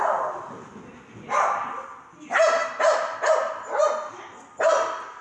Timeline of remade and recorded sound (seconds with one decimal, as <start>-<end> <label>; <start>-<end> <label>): 0.0-5.2 recorded